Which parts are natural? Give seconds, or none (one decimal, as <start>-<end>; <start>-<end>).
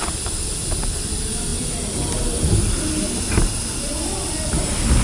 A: 0.0-5.0